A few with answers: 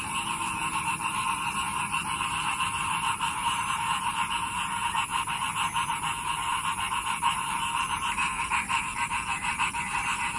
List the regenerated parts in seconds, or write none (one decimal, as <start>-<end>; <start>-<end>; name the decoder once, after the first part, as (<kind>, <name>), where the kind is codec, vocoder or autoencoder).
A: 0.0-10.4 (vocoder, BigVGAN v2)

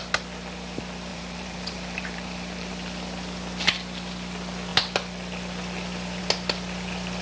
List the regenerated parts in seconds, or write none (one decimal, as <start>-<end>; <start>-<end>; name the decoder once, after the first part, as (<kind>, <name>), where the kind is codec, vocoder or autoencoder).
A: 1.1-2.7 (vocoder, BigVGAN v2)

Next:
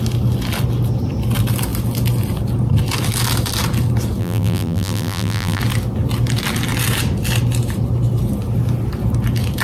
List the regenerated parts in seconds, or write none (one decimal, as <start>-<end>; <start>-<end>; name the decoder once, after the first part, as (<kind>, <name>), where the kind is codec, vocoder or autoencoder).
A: 4.2-5.6 (vocoder, BigVGAN v2)

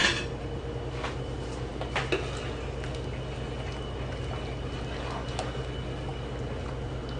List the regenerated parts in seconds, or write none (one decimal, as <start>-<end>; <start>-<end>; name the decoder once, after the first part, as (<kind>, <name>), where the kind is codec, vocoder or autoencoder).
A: none

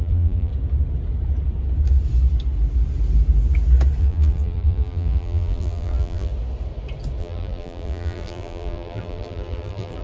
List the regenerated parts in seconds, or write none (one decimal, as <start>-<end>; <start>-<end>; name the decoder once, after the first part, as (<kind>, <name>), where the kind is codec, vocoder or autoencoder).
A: 0.0-0.5 (vocoder, BigVGAN v2); 4.0-6.3; 7.2-10.0